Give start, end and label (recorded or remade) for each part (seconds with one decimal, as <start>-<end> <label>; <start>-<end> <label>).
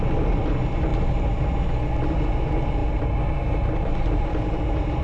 0.0-0.9 remade; 0.9-1.9 recorded; 1.9-2.8 remade; 2.8-3.5 recorded; 3.5-5.0 remade